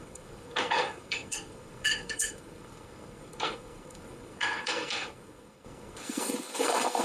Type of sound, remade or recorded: remade